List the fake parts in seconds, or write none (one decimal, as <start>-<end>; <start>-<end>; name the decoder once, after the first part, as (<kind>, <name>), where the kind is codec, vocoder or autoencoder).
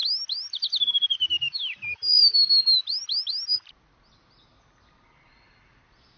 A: none